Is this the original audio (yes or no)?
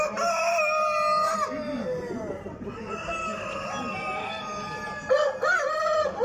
yes